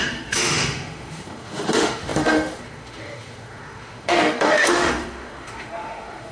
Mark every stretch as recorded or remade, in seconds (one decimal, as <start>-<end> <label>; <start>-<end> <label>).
0.0-6.3 remade